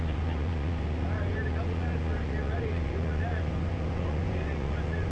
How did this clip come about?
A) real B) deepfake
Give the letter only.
B